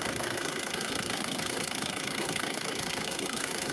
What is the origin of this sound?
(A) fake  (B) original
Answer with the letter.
A